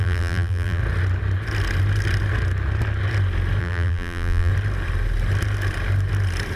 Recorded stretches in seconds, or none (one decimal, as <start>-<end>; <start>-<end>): 0.8-3.6; 4.5-6.6